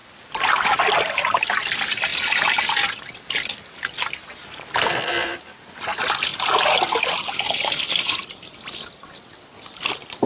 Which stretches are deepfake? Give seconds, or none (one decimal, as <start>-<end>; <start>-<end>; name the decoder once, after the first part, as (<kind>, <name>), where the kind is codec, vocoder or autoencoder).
2.1-5.0 (vocoder, BigVGAN v2)